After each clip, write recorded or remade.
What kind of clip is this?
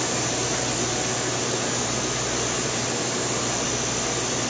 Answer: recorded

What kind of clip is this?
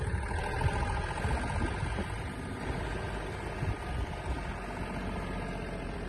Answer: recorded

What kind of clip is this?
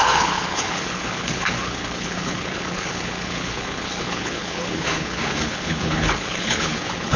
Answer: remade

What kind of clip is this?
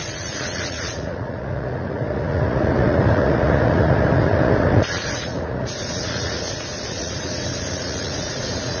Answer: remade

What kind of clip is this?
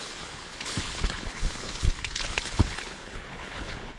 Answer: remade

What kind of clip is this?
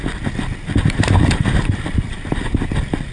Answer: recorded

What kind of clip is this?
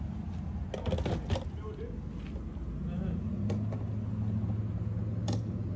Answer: recorded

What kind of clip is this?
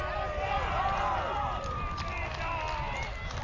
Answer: recorded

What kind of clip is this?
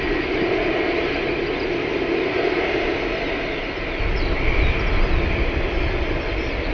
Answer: recorded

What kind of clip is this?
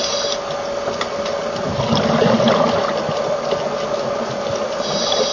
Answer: recorded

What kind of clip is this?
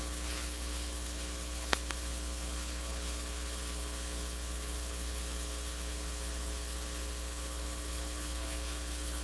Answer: remade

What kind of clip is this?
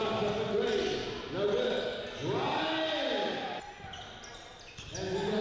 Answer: recorded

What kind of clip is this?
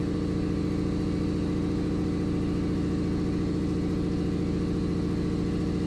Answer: recorded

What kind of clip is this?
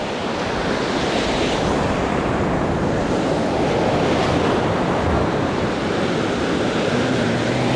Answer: recorded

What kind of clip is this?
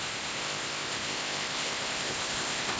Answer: remade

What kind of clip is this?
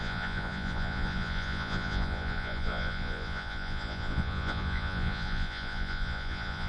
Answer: remade